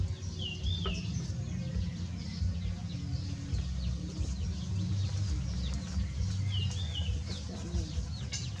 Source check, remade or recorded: recorded